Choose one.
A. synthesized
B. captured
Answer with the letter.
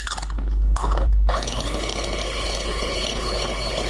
A